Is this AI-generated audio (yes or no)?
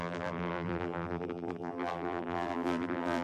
yes